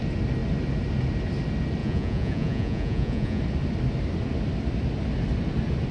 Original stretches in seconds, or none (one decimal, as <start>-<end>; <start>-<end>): 0.0-1.8; 3.4-5.9